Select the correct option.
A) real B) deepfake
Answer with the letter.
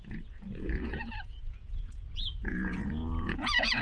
B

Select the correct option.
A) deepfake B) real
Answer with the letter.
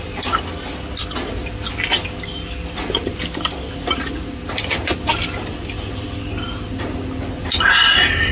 B